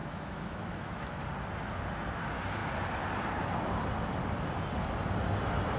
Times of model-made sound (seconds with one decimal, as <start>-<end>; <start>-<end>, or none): 0.0-1.2